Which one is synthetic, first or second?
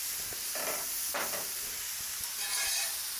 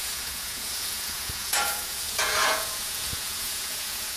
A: second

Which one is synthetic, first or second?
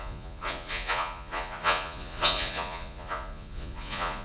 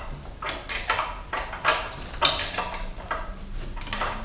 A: first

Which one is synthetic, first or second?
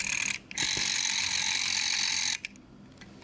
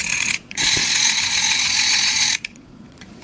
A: second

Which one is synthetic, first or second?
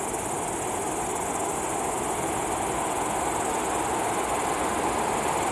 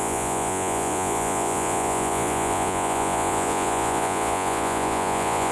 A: second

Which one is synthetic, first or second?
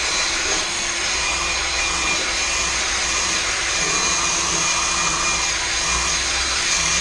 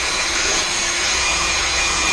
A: second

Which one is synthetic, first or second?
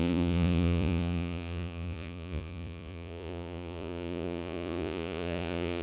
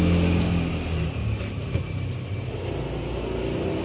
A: first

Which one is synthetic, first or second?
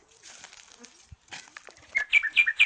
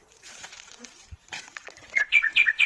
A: second